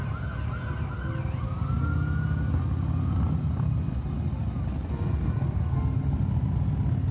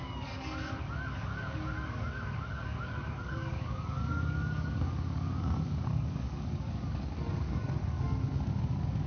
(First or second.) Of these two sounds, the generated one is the second